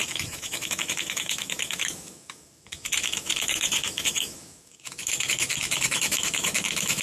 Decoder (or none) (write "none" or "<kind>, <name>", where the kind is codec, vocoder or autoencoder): autoencoder, DAC-VAE